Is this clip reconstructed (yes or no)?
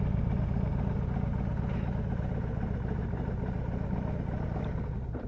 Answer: no